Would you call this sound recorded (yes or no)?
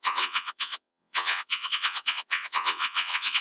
no